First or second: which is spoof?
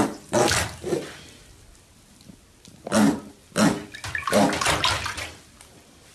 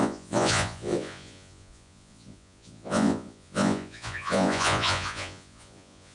second